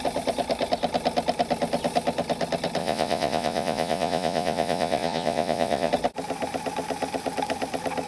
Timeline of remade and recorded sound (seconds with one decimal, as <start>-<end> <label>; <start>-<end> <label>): 0.0-2.8 recorded; 2.8-5.9 remade; 5.9-8.1 recorded